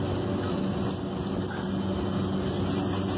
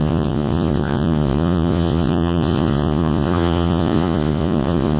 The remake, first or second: second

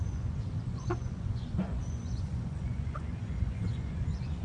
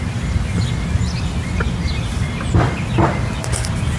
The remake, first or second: first